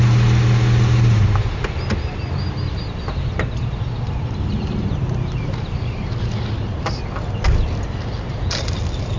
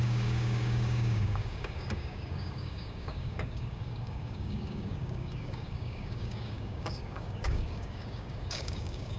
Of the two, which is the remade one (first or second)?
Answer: second